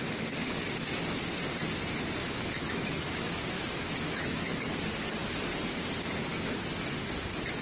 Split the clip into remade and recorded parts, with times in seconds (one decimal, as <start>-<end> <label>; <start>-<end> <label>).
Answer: 0.0-2.2 recorded; 2.2-4.7 remade; 4.7-7.6 recorded